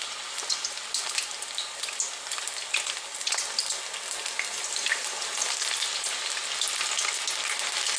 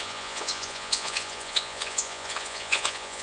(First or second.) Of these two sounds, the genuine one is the first